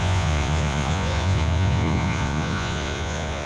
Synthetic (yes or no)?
yes